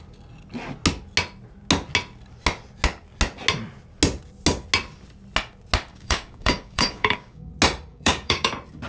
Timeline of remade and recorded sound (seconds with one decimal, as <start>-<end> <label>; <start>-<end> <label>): 0.0-5.9 recorded; 5.9-7.5 remade; 7.5-7.9 recorded; 7.9-8.5 remade; 8.5-8.9 recorded